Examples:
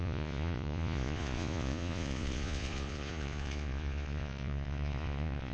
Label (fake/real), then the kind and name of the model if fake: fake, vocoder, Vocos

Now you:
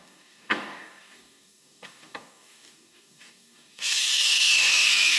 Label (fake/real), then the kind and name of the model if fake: fake, codec, DAC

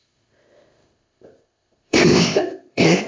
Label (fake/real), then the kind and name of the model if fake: fake, codec, ZipCodec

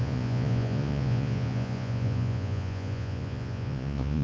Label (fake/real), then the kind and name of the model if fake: fake, vocoder, Vocos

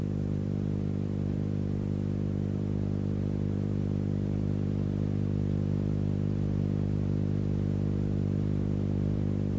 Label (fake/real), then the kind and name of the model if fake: fake, vocoder, BigVGAN v2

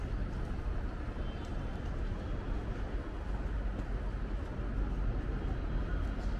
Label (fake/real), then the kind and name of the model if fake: real